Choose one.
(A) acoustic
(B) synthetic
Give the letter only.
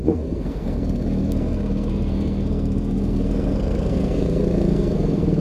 B